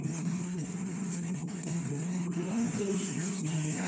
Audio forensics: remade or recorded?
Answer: remade